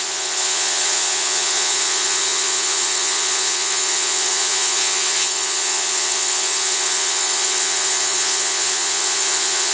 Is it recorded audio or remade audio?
remade